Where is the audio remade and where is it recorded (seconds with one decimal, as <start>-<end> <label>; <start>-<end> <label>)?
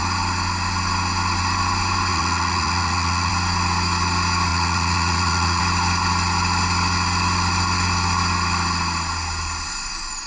0.0-2.1 recorded; 2.1-3.3 remade; 3.3-4.5 recorded; 4.5-5.6 remade; 5.6-10.3 recorded